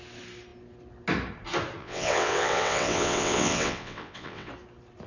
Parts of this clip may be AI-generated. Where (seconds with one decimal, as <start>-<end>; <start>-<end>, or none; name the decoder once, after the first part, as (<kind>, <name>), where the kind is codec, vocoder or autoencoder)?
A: 1.8-4.5 (vocoder, WaveNeXt)